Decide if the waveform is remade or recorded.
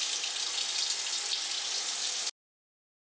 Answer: recorded